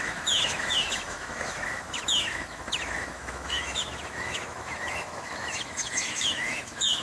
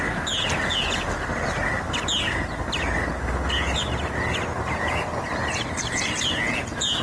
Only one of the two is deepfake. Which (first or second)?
first